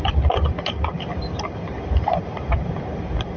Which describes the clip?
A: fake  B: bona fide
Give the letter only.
A